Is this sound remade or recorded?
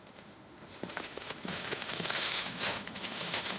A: remade